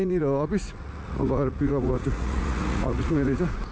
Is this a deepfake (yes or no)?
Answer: yes